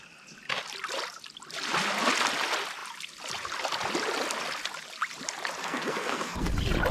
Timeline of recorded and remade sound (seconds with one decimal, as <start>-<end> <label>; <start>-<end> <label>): 0.0-5.6 recorded; 5.6-6.5 remade; 6.5-6.9 recorded